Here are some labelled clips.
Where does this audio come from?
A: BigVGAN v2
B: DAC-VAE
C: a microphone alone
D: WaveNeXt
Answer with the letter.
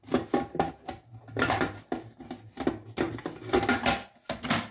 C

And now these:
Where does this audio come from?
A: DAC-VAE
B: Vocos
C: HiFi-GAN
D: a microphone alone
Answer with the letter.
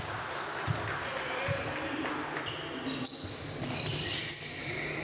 D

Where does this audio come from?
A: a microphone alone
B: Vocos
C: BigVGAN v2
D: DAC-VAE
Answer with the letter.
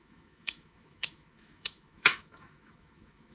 D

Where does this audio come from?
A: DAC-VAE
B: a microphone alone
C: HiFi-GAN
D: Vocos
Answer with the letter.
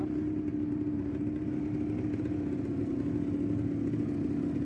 B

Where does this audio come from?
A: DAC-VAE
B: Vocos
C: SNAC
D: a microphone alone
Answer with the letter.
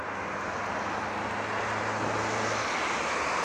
D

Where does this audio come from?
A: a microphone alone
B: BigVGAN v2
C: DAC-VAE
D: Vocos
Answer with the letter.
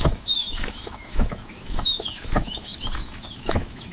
C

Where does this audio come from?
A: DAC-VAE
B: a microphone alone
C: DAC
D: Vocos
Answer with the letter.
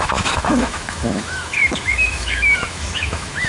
A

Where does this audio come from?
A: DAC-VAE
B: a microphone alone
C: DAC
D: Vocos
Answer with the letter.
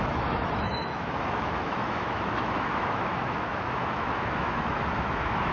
A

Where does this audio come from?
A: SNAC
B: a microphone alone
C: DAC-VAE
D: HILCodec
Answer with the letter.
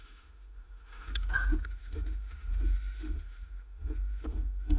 C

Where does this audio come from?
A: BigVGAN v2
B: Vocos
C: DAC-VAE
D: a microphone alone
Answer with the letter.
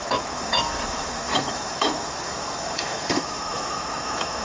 C